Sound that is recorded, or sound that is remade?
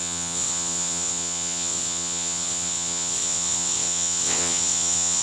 remade